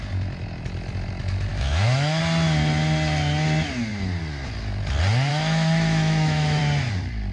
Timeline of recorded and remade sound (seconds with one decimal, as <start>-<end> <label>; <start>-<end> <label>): 0.0-1.5 recorded; 1.5-2.2 remade; 2.2-5.3 recorded; 5.3-6.6 remade; 6.6-7.3 recorded